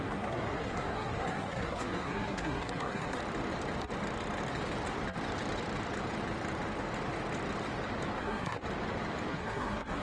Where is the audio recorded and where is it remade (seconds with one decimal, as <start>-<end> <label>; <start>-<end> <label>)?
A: 0.0-3.2 remade; 3.2-8.2 recorded; 8.2-8.6 remade; 8.6-9.3 recorded; 9.3-10.0 remade